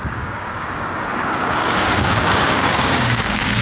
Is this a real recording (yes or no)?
no